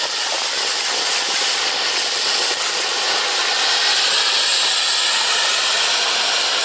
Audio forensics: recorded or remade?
recorded